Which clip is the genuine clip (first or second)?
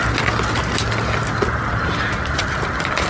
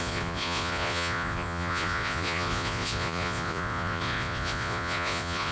first